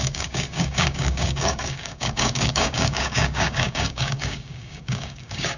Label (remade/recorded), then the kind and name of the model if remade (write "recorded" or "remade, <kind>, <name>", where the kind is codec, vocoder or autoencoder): remade, codec, DAC